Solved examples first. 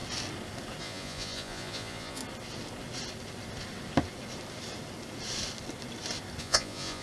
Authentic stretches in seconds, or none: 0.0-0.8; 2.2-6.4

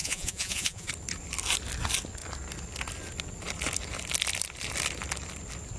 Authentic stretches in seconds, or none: 0.9-5.8